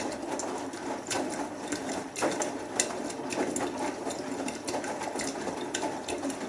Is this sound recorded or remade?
recorded